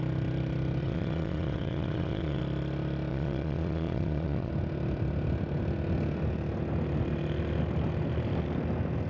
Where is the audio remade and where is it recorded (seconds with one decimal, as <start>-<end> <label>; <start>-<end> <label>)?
0.0-0.8 recorded; 0.8-2.4 remade; 2.4-3.1 recorded; 3.1-4.5 remade; 4.5-9.1 recorded